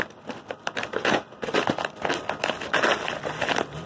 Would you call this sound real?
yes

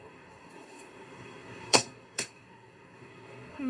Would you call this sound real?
no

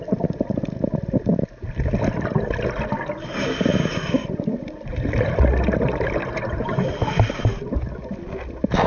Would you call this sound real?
yes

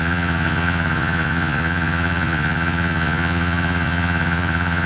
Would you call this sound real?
no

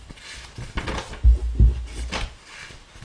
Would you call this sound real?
yes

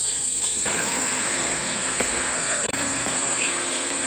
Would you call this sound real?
no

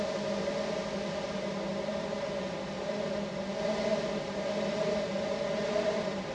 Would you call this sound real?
yes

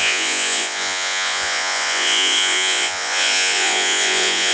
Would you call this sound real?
no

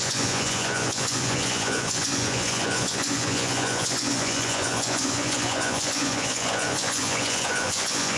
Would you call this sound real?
no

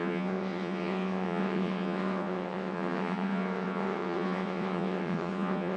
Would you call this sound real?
no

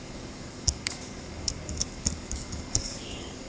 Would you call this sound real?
no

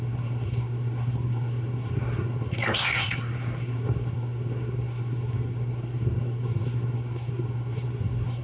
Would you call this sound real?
no